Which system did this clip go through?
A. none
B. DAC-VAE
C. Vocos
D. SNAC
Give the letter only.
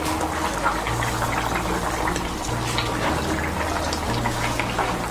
A